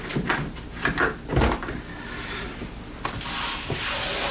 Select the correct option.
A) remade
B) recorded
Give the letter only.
B